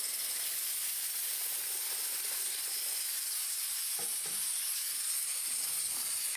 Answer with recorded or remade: recorded